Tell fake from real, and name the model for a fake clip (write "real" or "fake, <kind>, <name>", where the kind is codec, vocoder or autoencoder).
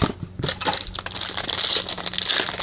real